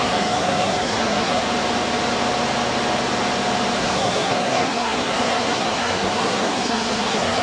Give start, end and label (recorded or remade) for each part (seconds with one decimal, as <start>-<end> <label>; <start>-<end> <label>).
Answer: 0.0-1.4 remade; 1.4-3.8 recorded; 3.8-7.4 remade